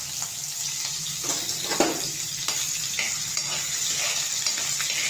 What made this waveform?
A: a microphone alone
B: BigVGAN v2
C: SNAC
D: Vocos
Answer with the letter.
A